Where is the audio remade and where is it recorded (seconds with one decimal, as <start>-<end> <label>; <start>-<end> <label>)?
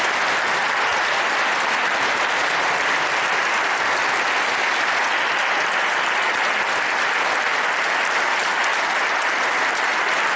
0.0-10.4 recorded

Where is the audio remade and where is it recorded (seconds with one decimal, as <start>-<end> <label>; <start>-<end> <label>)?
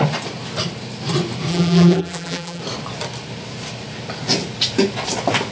0.0-1.5 recorded; 1.5-2.6 remade; 2.6-5.5 recorded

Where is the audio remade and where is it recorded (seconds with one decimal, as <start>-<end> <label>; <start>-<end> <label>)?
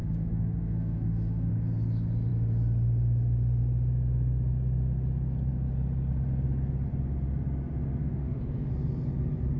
0.0-1.5 remade; 1.5-8.0 recorded; 8.0-8.7 remade; 8.7-9.6 recorded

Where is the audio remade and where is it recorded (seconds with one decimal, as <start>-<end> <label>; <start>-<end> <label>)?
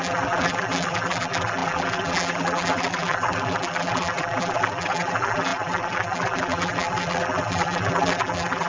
0.0-8.7 remade